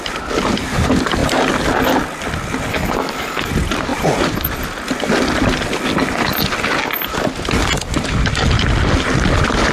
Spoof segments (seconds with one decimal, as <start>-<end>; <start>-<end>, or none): 2.7-3.5